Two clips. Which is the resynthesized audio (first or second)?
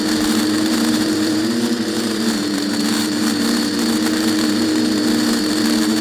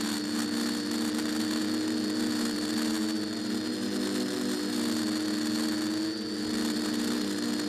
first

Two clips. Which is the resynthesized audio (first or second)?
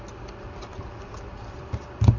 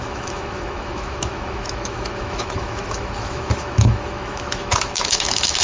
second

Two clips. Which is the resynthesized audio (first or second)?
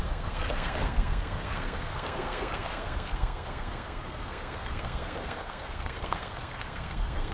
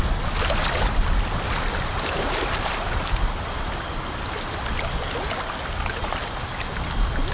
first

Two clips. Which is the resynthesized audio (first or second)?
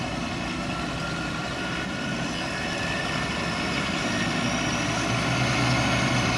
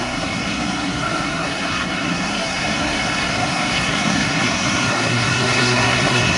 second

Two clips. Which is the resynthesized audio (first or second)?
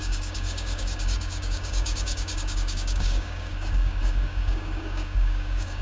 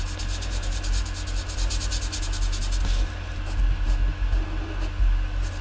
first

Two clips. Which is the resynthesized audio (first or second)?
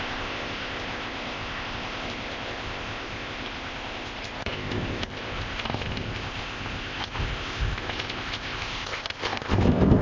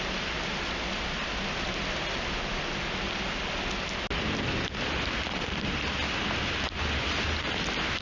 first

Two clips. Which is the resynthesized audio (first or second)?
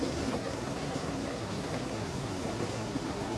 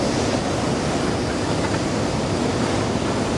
first